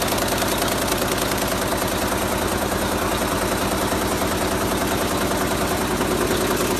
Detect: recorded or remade recorded